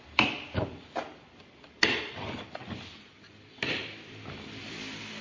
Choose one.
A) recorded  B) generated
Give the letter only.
A